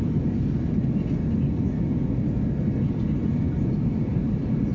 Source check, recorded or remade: recorded